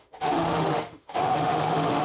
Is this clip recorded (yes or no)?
no